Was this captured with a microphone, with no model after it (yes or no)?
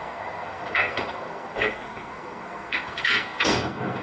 no